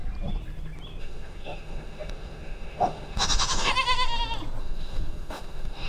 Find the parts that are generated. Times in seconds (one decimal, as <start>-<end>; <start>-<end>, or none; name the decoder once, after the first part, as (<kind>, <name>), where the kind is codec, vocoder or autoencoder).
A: 1.0-3.7 (autoencoder, DAC-VAE); 4.6-5.9